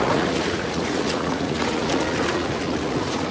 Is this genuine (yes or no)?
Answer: no